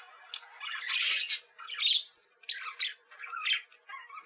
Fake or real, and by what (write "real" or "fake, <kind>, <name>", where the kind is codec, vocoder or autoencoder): real